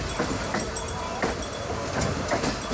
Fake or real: real